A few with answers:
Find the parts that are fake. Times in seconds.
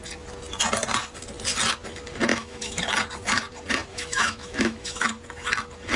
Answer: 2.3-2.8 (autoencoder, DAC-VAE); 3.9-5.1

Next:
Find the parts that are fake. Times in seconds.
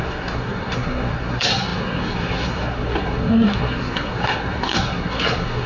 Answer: 0.0-5.7 (codec, SNAC)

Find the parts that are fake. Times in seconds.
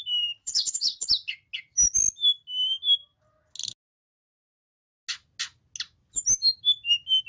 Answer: 0.4-1.1 (codec, HILCodec)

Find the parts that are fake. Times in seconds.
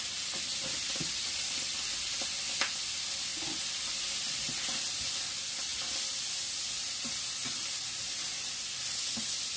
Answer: none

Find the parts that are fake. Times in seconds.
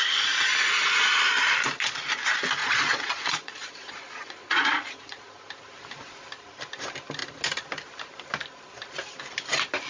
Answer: 2.6-5.2 (vocoder, Vocos)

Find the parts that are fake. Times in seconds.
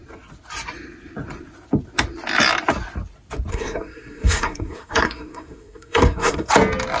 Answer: 3.5-6.5 (codec, SNAC)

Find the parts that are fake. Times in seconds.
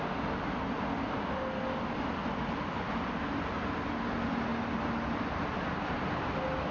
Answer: none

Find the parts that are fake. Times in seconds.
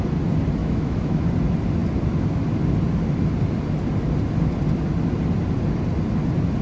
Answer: 0.6-1.2 (autoencoder, DAC-VAE)